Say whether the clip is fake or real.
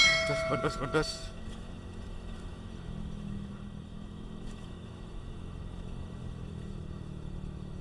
fake